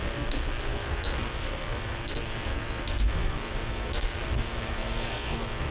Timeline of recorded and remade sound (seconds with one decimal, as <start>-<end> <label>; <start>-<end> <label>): 0.0-5.7 remade